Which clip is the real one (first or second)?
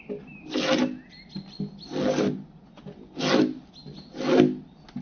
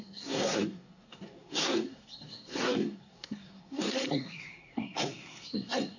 first